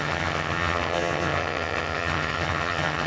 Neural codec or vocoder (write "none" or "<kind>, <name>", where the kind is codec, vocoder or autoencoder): vocoder, HiFi-GAN